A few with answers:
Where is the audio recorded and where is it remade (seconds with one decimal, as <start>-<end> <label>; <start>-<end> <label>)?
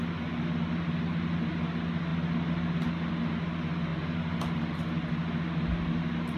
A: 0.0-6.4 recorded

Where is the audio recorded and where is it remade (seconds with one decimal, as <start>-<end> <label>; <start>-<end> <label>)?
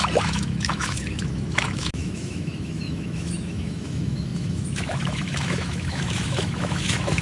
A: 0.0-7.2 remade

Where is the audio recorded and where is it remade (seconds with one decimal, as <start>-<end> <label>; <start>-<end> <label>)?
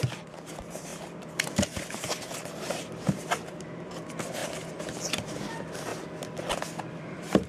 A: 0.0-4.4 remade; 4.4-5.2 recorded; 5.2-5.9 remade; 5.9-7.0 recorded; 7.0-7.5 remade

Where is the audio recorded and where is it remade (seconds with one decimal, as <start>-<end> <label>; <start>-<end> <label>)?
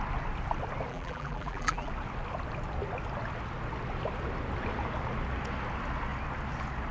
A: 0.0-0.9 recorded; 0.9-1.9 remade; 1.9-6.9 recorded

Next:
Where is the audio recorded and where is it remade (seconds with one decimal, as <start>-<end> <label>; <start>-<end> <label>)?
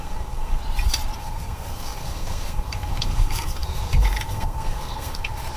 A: 0.0-0.6 remade; 0.6-1.2 recorded; 1.2-5.6 remade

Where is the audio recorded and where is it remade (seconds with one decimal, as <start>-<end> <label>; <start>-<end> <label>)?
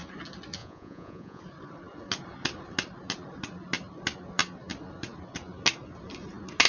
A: 0.0-0.6 recorded; 0.6-1.4 remade; 1.4-6.7 recorded